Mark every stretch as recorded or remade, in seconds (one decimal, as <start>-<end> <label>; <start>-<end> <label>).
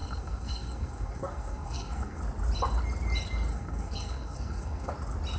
0.0-2.2 remade; 2.2-3.5 recorded; 3.5-4.9 remade; 4.9-5.4 recorded